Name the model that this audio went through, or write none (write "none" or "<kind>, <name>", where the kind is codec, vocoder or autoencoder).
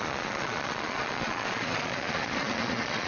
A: vocoder, Vocos